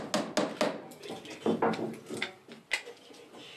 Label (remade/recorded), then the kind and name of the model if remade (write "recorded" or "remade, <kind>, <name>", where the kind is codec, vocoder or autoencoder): recorded